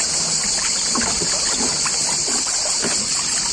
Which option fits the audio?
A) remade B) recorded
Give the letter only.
B